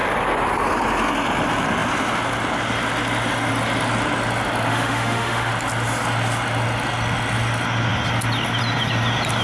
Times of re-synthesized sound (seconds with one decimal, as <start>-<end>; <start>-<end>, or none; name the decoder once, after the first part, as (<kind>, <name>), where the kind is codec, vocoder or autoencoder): 4.7-5.5 (autoencoder, DAC-VAE)